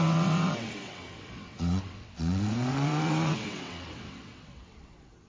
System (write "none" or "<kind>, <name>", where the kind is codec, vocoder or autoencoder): vocoder, WaveNeXt